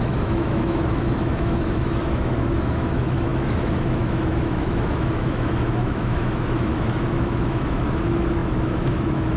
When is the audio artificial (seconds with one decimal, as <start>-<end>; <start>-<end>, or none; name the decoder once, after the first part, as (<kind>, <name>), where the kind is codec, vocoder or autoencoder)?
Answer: 0.0-9.4 (autoencoder, DAC-VAE)